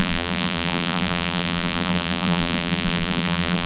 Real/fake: fake